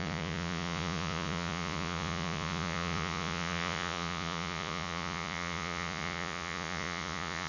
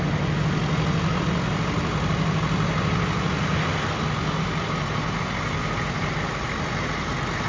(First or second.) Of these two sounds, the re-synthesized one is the first